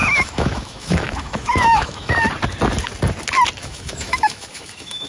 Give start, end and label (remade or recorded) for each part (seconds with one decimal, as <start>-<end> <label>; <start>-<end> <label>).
0.0-2.2 remade; 2.2-3.6 recorded; 3.6-5.1 remade